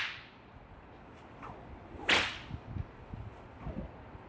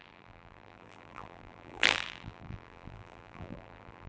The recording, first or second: first